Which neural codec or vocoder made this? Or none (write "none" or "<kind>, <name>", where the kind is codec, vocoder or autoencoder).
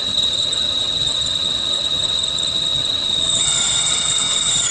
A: vocoder, HiFi-GAN